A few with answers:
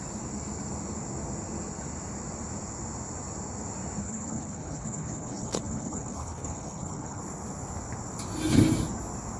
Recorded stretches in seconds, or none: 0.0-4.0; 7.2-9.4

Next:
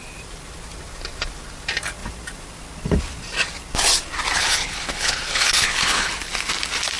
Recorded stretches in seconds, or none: 0.0-4.4; 6.1-7.0

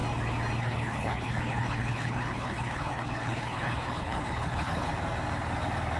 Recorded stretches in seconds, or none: 0.0-0.6; 4.9-6.0

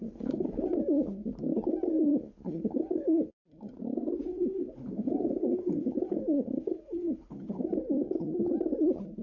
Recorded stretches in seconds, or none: 0.7-2.1; 3.3-4.3; 7.7-9.2

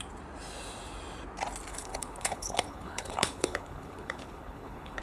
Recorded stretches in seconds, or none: 0.0-1.7

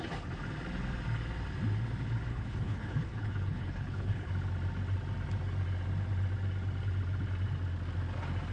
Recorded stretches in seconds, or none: 0.0-2.3; 4.3-8.5

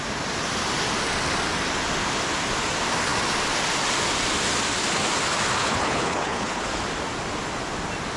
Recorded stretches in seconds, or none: 0.0-5.6; 6.6-8.2